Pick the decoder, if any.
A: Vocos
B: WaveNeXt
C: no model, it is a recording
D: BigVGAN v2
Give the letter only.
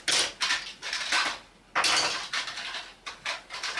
C